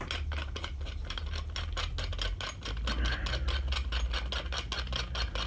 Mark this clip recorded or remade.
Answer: recorded